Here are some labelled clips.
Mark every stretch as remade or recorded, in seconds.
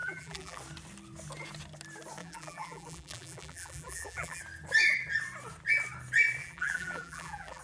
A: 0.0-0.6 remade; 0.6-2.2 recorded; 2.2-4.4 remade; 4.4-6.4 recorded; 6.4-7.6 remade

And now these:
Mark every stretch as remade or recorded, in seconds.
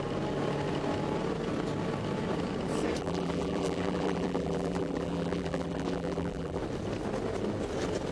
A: 0.0-3.0 recorded; 3.0-6.6 remade; 6.6-8.1 recorded